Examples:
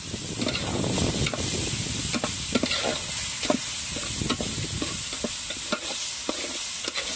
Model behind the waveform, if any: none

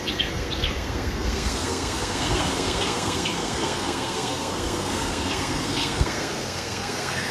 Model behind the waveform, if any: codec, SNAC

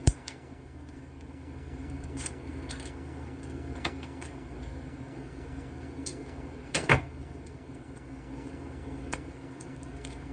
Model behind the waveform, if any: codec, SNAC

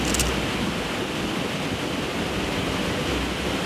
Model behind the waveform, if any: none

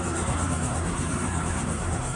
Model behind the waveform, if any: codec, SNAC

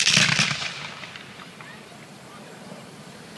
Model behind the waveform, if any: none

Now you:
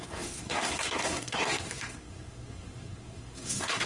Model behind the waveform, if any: codec, SNAC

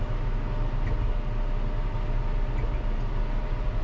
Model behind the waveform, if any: none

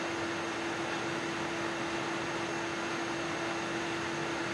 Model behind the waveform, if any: none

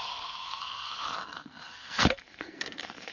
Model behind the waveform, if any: codec, SNAC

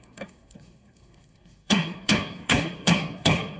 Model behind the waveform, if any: codec, SNAC